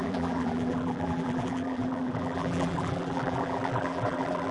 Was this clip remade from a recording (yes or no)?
yes